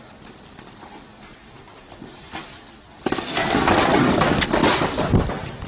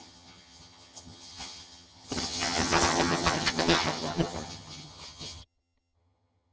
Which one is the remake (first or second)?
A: second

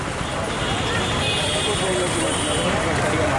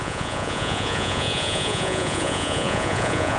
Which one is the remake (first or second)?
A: second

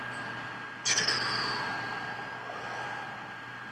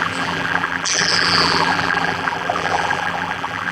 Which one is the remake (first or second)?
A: second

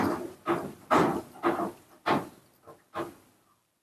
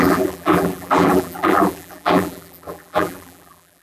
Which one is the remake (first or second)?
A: second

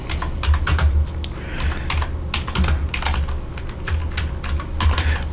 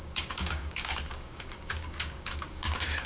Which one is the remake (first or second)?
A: second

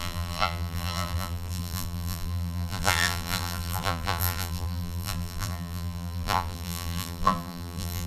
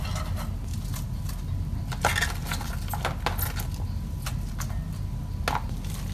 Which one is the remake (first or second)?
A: first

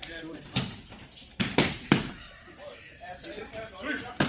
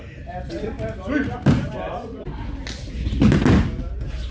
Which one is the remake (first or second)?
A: first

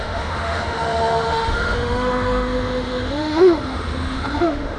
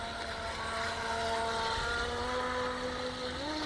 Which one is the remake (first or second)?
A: first